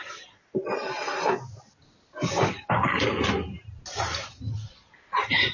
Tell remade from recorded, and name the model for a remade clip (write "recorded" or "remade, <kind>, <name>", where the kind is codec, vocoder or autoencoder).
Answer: recorded